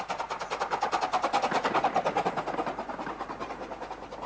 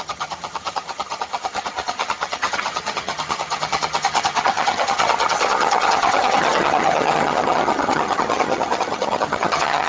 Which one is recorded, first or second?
first